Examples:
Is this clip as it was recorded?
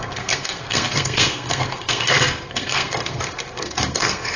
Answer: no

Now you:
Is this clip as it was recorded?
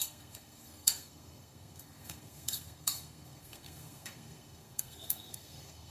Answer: no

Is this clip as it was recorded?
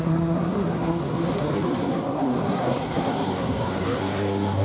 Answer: no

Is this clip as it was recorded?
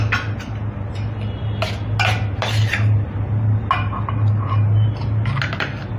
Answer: yes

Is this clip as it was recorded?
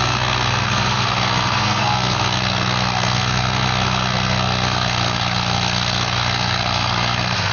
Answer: no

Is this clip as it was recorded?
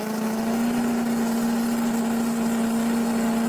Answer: yes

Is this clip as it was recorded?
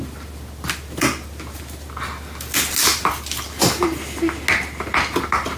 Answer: yes